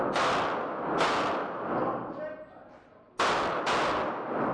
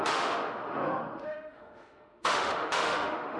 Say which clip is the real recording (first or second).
first